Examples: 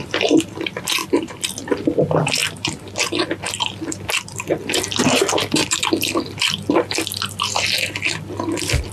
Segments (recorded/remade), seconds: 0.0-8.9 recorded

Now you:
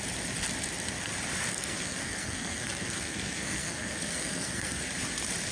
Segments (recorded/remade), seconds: 0.0-1.5 recorded; 1.5-4.8 remade; 4.8-5.5 recorded

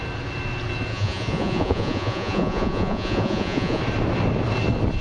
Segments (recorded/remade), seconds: 0.0-0.9 recorded; 0.9-3.8 remade; 3.8-5.0 recorded

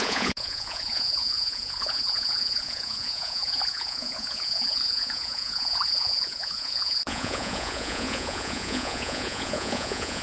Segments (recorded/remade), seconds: 0.0-10.2 remade

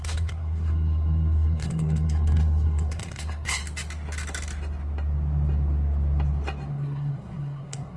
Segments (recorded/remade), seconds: 0.0-3.6 remade; 3.6-6.7 recorded; 6.7-8.0 remade

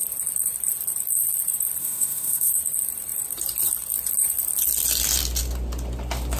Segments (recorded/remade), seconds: 0.0-1.8 recorded; 1.8-2.5 remade; 2.5-6.4 recorded

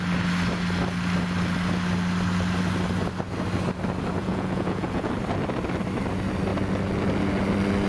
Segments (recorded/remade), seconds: 0.0-4.2 recorded; 4.2-5.1 remade; 5.1-7.9 recorded

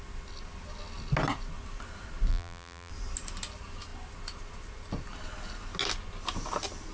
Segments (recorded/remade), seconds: 0.0-2.3 recorded; 2.3-2.9 remade; 2.9-6.9 recorded